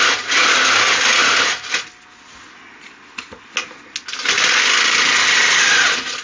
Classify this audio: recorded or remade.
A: recorded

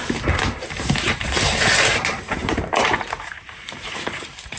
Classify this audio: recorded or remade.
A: remade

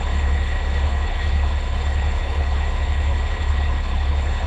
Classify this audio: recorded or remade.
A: remade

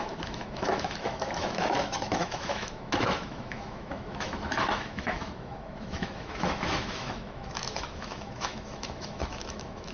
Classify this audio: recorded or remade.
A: remade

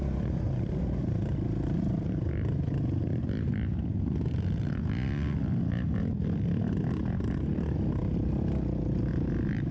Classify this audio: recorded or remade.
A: recorded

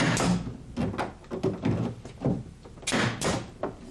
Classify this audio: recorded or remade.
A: recorded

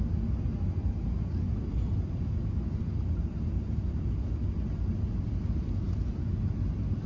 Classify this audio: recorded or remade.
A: recorded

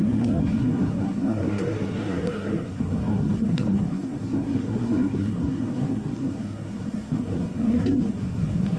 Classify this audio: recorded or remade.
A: remade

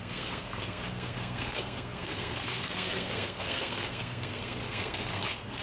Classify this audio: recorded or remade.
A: remade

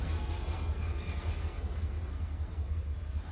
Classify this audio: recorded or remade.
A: remade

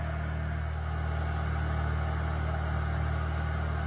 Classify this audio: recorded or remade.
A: recorded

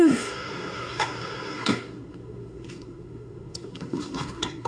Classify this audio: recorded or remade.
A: remade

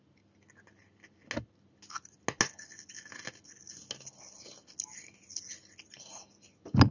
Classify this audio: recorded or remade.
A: recorded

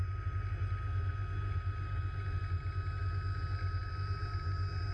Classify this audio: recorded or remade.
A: recorded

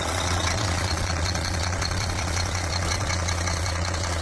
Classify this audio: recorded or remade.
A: remade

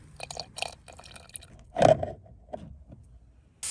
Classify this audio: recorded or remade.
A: recorded